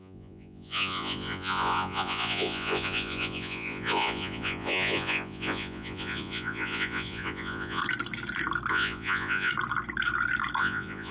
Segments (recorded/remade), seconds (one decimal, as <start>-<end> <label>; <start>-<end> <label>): 0.0-7.8 remade; 7.8-8.7 recorded; 8.7-9.5 remade; 9.5-10.6 recorded; 10.6-11.1 remade

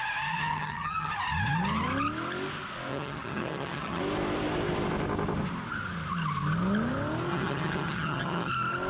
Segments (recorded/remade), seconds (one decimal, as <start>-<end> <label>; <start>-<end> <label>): 0.0-0.4 recorded; 0.4-1.1 remade; 1.1-2.9 recorded; 2.9-4.0 remade; 4.0-7.3 recorded; 7.3-8.5 remade; 8.5-8.9 recorded

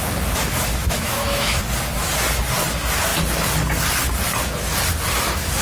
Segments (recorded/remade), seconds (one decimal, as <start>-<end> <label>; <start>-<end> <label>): 0.0-0.8 recorded; 0.8-1.6 remade; 1.6-5.6 recorded

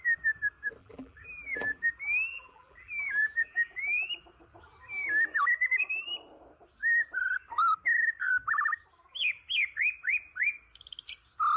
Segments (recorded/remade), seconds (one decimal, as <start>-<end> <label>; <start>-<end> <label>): 0.0-0.8 recorded; 0.8-1.9 remade; 1.9-2.3 recorded; 2.3-4.1 remade; 4.1-11.6 recorded

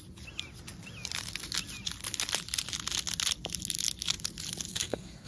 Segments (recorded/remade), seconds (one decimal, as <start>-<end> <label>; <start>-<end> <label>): 0.0-4.7 recorded; 4.7-5.3 remade